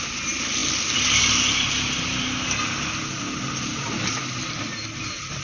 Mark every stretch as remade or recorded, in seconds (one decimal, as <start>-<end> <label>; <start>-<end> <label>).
0.0-5.4 recorded